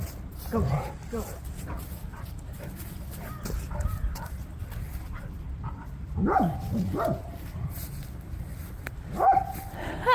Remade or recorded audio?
recorded